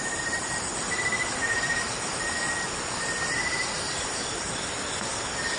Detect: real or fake real